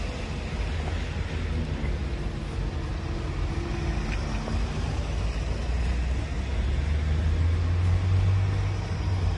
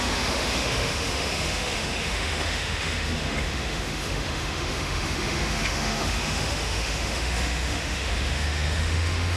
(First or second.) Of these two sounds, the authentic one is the first